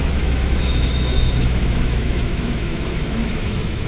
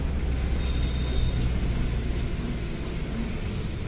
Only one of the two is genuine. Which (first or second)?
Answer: second